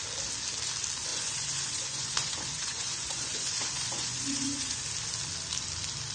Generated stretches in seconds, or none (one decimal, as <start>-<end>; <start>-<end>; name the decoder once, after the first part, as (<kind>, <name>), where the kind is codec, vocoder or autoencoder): 1.1-4.8 (vocoder, Vocos)